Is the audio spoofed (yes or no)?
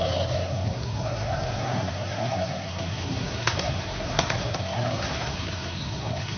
yes